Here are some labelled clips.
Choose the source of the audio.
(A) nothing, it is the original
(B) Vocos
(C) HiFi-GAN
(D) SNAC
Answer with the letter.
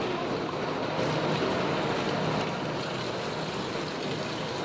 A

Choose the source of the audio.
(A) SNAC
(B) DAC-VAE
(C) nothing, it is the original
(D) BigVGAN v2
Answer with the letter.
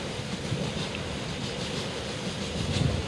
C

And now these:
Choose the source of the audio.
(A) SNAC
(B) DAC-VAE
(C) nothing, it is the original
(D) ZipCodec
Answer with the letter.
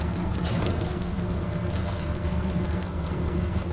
A